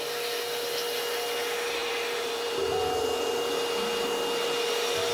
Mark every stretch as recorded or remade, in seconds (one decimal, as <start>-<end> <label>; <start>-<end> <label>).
0.0-1.8 recorded; 1.8-2.8 remade; 2.8-5.1 recorded